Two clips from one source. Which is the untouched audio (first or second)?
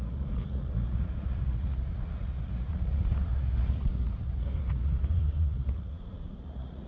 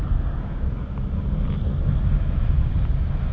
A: second